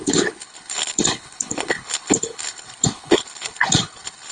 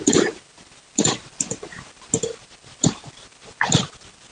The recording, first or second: second